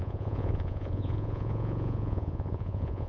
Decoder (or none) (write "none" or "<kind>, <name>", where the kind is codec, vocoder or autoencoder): vocoder, Vocos